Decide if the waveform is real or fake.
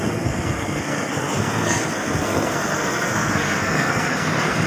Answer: fake